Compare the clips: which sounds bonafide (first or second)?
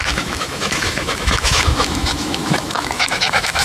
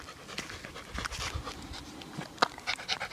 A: second